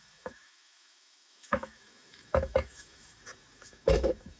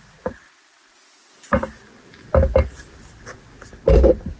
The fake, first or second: first